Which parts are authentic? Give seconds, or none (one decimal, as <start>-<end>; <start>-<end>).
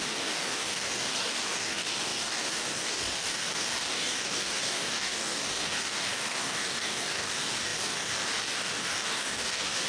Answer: none